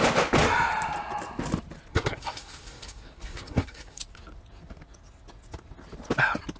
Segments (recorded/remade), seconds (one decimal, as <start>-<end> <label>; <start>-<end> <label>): 0.0-1.9 recorded; 1.9-4.0 remade; 4.0-6.6 recorded